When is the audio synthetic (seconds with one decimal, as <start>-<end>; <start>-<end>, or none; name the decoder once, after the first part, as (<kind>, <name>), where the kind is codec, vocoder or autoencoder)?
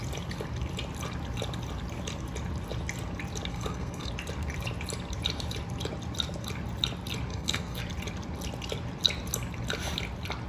3.5-4.1 (codec, SNAC); 7.3-7.8